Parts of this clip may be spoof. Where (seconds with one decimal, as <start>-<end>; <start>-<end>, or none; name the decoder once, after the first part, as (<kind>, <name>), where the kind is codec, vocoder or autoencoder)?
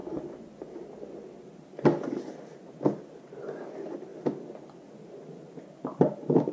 none